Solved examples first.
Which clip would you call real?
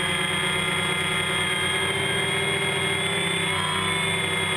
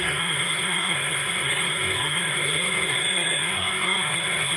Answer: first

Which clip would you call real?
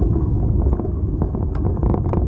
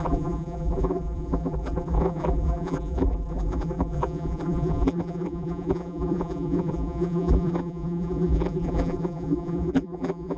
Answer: first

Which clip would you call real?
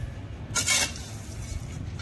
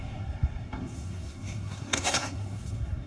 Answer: first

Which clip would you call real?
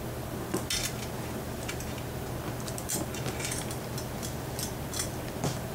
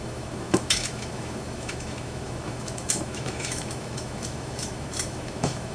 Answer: first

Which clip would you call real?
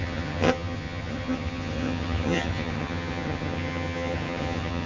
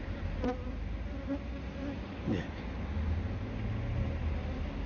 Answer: second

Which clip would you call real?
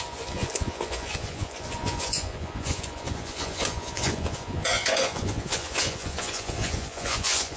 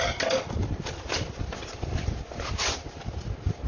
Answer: second